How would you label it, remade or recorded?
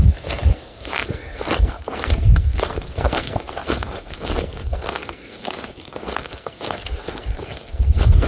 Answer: remade